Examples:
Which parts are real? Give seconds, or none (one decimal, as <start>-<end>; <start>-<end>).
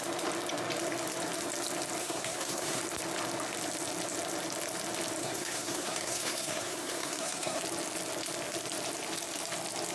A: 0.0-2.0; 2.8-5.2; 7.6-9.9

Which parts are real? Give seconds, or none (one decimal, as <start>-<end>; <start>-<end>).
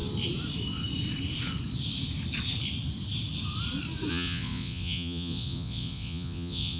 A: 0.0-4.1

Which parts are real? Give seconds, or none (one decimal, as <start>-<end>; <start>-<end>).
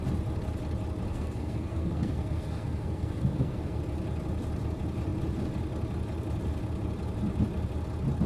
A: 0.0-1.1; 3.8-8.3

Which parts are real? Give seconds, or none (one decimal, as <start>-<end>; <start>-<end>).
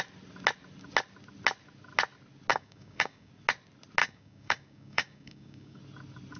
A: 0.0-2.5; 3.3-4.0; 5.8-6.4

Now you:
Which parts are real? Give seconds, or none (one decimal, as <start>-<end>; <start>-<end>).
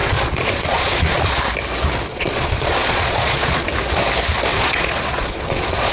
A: 1.4-2.1; 3.7-4.5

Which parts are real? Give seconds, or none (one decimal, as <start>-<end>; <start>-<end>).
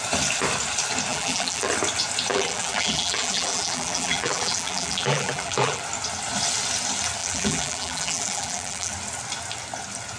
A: 0.0-1.1; 1.7-2.3; 5.8-7.2; 8.9-10.2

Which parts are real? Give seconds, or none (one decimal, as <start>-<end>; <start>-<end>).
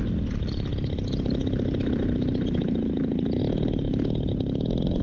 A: 0.0-5.0